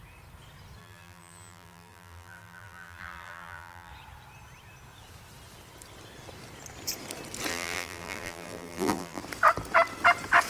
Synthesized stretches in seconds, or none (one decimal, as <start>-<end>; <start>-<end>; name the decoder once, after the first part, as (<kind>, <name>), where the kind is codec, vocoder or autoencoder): 0.8-3.9 (vocoder, BigVGAN v2); 7.5-9.2